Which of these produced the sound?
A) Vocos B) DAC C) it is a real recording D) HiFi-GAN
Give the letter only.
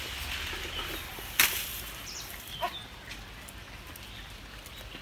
C